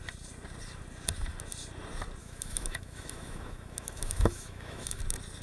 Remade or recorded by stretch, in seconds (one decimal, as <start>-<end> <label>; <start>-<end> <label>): 0.0-2.2 recorded; 2.2-5.0 remade; 5.0-5.4 recorded